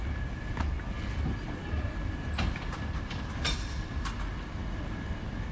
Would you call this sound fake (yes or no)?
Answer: no